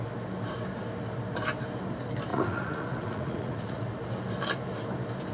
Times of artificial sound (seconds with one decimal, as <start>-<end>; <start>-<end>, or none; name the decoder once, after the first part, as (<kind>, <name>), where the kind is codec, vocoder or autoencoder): 2.3-3.8 (vocoder, Vocos)